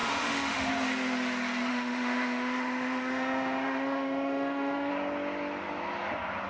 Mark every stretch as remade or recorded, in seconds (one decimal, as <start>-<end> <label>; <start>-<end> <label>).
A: 0.0-0.7 remade; 0.7-1.7 recorded; 1.7-4.9 remade; 4.9-6.5 recorded